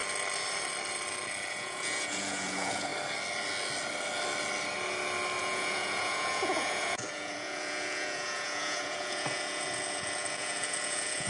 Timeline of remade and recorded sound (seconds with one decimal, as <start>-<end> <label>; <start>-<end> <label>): 0.0-1.5 recorded; 1.5-2.9 remade; 2.9-5.4 recorded; 5.4-11.3 remade